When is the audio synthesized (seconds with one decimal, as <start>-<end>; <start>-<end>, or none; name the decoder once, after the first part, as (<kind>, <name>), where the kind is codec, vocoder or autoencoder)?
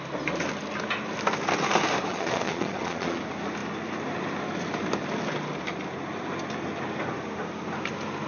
2.1-3.2 (vocoder, Vocos)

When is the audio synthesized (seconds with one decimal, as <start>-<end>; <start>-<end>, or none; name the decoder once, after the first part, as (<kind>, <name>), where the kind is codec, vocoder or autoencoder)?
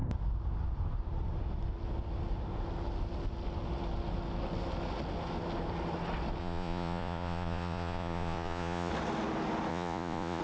6.4-8.9 (vocoder, Vocos); 9.7-10.4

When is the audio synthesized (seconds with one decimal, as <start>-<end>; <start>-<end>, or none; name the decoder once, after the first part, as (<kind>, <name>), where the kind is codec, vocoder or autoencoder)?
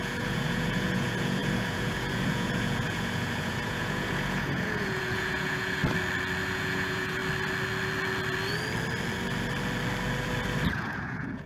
0.0-5.8 (vocoder, Vocos); 6.4-7.2; 10.7-11.5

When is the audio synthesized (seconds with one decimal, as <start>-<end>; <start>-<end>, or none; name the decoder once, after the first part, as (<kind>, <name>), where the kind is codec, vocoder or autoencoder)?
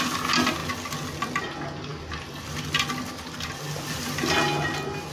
none